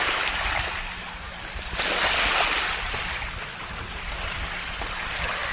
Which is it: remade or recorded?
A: recorded